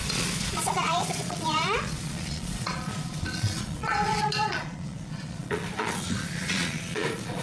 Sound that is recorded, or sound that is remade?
remade